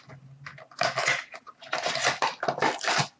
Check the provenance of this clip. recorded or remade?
recorded